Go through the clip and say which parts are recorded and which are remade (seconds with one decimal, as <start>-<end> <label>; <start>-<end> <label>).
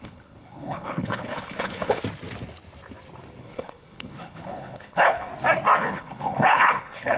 0.0-2.0 remade; 2.0-3.4 recorded; 3.4-5.3 remade; 5.3-5.8 recorded; 5.8-7.2 remade